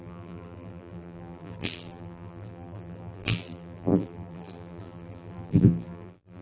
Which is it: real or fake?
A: fake